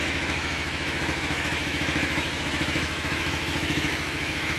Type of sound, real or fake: fake